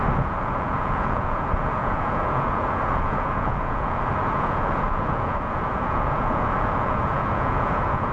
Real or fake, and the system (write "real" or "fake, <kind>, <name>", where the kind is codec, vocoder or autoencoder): fake, vocoder, Vocos